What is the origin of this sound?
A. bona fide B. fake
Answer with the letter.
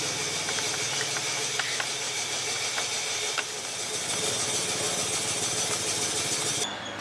A